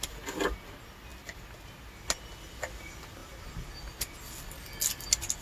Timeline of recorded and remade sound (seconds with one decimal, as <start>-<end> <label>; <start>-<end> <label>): 0.0-5.4 recorded